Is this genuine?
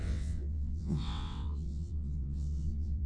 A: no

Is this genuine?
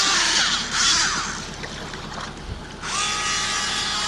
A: yes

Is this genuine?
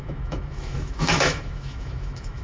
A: no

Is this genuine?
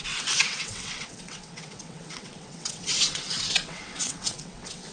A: no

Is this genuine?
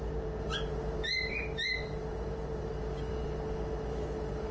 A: no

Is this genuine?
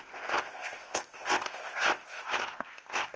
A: no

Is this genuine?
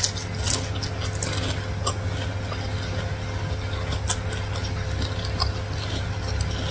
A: yes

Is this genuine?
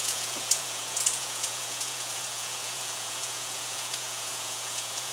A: no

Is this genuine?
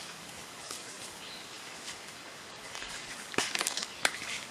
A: no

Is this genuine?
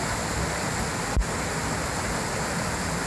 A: yes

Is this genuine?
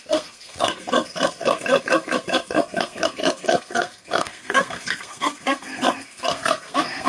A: no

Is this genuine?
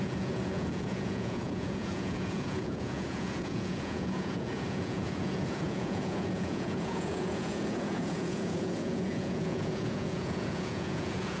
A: no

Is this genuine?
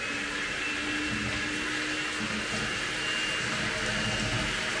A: yes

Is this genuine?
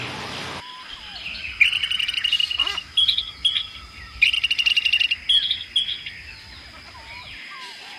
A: yes